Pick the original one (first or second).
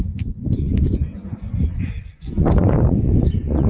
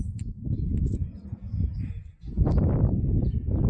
second